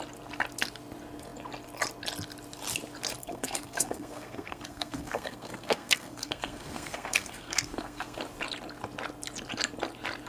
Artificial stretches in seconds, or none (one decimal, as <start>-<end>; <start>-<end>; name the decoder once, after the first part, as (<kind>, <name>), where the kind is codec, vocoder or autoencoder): 3.2-8.2 (codec, SNAC)

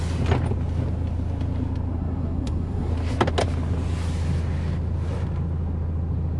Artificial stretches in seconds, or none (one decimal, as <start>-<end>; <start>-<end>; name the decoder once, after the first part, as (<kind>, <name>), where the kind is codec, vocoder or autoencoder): 1.9-2.9 (codec, SNAC)

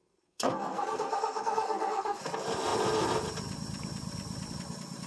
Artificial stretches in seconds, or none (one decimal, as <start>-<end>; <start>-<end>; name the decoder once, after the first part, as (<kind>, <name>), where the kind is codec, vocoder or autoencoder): 0.0-2.2 (codec, SNAC)

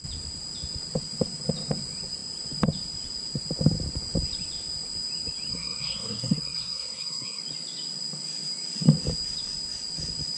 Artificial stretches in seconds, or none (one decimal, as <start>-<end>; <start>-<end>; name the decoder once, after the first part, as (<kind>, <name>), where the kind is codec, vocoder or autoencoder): 5.5-7.4 (codec, SNAC)